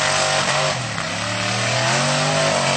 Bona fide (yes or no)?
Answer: yes